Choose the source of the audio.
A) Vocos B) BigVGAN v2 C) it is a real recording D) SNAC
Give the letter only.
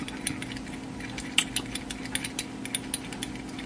C